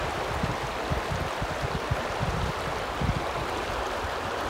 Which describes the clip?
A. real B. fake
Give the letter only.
A